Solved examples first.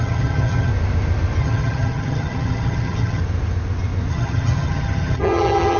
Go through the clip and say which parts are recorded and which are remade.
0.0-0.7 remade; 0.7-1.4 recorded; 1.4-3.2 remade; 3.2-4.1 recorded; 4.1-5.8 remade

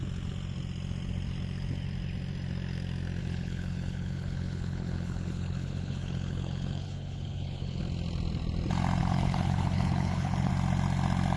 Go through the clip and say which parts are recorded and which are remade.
0.0-3.2 recorded; 3.2-7.8 remade; 7.8-9.0 recorded; 9.0-10.5 remade; 10.5-11.4 recorded

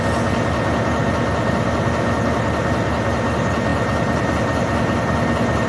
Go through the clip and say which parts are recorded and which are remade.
0.0-5.7 recorded

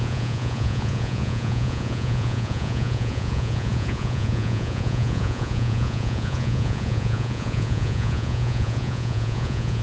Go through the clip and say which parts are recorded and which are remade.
0.0-9.8 remade

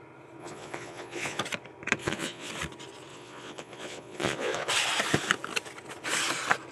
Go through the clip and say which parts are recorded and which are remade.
0.0-0.4 recorded; 0.4-1.4 remade; 1.4-2.0 recorded; 2.0-2.5 remade; 2.5-3.1 recorded; 3.1-4.7 remade; 4.7-6.7 recorded

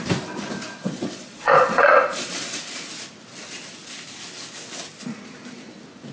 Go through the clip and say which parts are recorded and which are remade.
0.0-0.8 recorded; 0.8-2.6 remade; 2.6-6.1 recorded

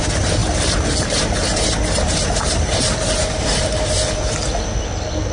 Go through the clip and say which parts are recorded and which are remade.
0.0-0.4 recorded; 0.4-3.6 remade; 3.6-5.3 recorded

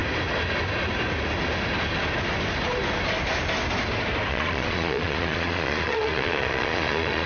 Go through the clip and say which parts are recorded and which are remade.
0.0-4.3 recorded; 4.3-7.3 remade